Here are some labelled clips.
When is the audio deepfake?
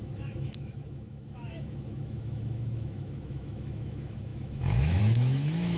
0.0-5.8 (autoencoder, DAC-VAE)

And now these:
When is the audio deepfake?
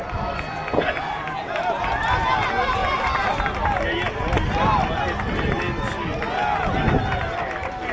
none